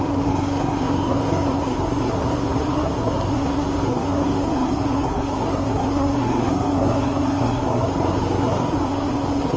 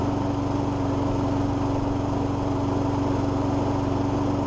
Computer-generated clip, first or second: first